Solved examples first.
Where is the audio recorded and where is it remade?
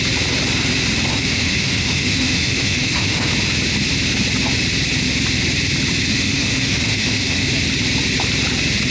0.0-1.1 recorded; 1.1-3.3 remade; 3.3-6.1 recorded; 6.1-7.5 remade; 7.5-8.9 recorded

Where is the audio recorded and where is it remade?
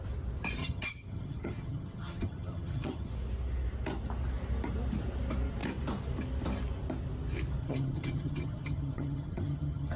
0.0-0.6 recorded; 0.6-3.1 remade; 3.1-7.6 recorded; 7.6-10.0 remade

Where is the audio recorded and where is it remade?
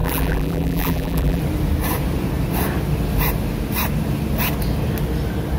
0.0-1.4 remade; 1.4-5.6 recorded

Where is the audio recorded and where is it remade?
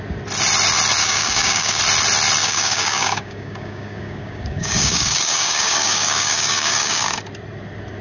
0.0-1.0 recorded; 1.0-1.8 remade; 1.8-2.4 recorded; 2.4-7.2 remade; 7.2-8.0 recorded